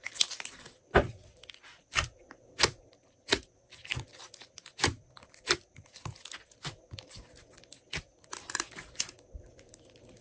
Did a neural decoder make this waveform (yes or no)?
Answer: no